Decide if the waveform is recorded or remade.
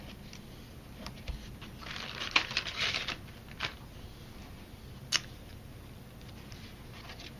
recorded